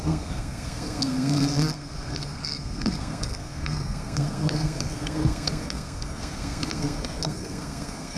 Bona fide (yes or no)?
no